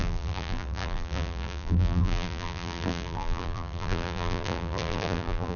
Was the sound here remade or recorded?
remade